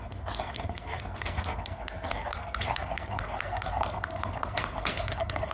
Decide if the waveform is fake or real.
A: fake